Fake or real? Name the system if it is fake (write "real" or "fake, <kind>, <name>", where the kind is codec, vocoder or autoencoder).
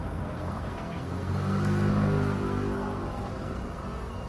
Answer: fake, codec, SNAC